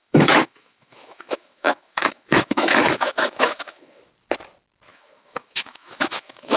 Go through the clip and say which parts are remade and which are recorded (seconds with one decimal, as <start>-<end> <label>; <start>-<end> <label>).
0.0-4.0 remade; 4.0-4.9 recorded; 4.9-6.6 remade